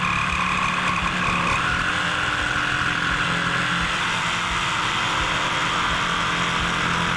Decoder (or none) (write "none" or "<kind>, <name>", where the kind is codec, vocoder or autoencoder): none